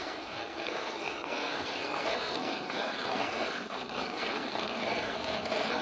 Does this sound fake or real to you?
fake